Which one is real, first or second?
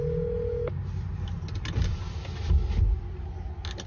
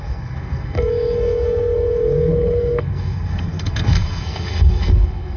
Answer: first